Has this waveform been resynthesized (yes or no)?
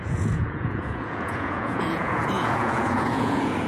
yes